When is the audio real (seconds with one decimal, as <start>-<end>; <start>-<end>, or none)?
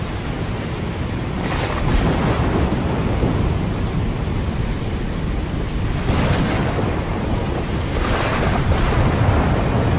0.0-10.0